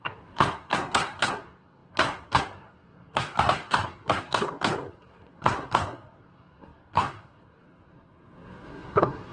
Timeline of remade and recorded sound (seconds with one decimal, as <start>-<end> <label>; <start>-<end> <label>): 0.0-9.3 remade

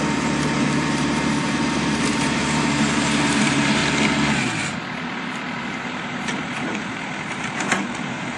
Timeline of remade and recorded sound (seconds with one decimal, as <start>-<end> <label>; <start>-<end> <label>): 0.0-3.8 remade; 3.8-5.6 recorded; 5.6-8.4 remade